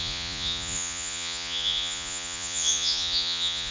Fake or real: fake